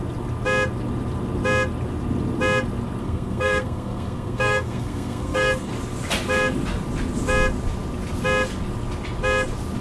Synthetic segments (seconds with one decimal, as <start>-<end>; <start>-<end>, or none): 3.0-5.7